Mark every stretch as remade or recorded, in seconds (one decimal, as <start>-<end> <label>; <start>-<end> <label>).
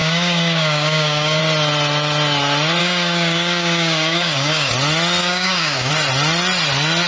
0.0-1.4 remade; 1.4-2.8 recorded; 2.8-4.7 remade; 4.7-5.2 recorded; 5.2-5.9 remade; 5.9-7.1 recorded